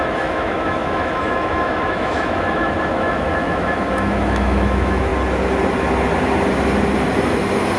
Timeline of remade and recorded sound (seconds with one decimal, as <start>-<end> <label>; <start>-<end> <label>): 0.0-5.1 remade; 5.1-7.8 recorded